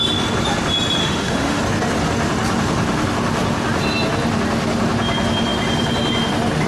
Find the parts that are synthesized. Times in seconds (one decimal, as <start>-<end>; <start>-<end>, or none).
1.0-1.6